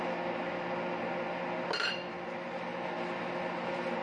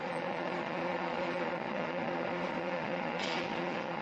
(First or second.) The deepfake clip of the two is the second